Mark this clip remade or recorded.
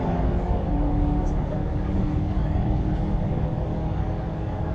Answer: remade